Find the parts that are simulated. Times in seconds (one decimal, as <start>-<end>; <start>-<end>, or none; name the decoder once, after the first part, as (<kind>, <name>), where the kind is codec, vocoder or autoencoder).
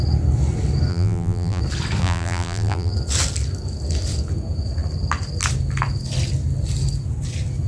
0.9-1.6 (vocoder, BigVGAN v2); 2.0-2.9